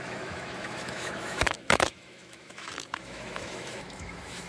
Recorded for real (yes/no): no